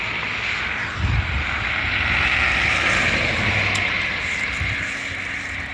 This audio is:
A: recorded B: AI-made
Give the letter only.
A